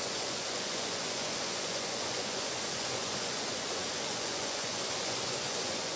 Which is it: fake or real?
fake